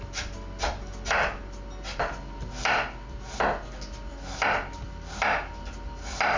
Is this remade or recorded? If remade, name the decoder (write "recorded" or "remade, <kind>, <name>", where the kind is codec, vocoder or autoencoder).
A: recorded